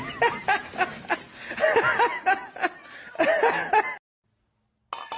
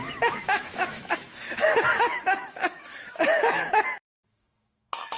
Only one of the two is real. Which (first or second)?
first